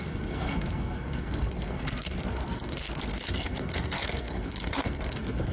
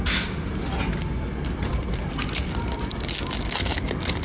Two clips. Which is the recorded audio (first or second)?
second